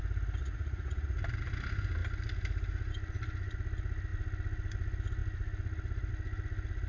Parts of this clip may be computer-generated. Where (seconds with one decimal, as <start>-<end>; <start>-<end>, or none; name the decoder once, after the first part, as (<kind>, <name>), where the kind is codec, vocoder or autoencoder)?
0.4-1.2 (vocoder, Vocos)